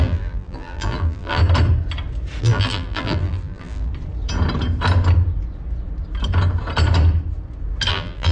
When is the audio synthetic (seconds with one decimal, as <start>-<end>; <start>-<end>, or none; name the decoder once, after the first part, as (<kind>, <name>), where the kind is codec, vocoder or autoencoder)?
0.0-1.4 (vocoder, BigVGAN v2); 2.4-3.9; 7.9-8.3